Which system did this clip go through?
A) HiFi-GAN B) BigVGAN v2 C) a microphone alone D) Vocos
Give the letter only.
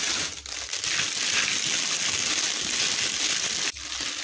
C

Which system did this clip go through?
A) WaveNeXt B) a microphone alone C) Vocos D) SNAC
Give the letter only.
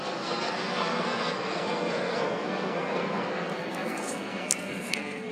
D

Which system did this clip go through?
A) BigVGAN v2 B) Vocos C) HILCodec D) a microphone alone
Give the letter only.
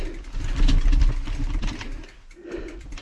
D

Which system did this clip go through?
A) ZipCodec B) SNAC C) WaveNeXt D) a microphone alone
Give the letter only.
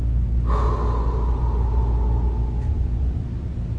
D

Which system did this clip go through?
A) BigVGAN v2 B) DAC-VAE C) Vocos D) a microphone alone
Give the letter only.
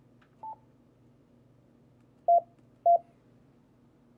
D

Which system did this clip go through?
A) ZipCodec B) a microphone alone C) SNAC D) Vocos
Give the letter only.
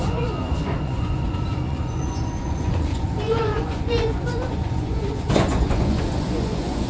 D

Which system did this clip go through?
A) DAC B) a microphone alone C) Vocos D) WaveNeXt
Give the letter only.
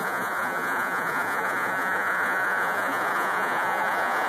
C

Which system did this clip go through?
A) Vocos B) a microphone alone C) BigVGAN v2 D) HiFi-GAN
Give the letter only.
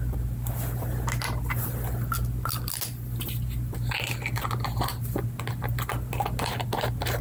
B